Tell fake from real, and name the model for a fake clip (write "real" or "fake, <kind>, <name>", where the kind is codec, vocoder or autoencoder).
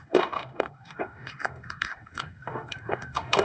fake, autoencoder, DAC-VAE